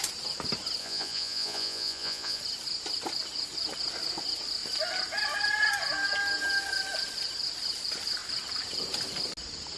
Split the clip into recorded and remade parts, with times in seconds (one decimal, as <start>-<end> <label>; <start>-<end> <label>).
0.0-0.8 recorded; 0.8-2.4 remade; 2.4-9.8 recorded

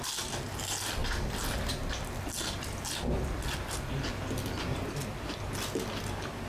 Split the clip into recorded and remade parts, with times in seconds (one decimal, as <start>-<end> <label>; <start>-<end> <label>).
0.0-6.5 recorded

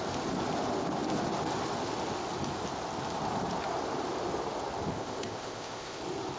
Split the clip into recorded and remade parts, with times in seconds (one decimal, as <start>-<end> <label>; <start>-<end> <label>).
0.0-4.9 recorded; 4.9-6.0 remade; 6.0-6.4 recorded

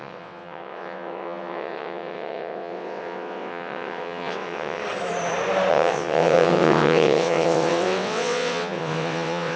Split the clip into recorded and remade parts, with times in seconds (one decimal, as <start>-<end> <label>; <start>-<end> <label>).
0.0-4.8 remade; 4.8-5.7 recorded; 5.7-9.6 remade

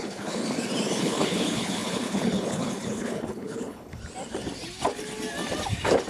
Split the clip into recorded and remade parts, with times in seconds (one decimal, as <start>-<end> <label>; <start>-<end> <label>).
0.0-0.4 remade; 0.4-1.0 recorded; 1.0-4.0 remade; 4.0-6.1 recorded